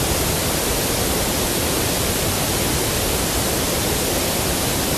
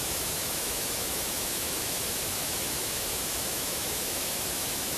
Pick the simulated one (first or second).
second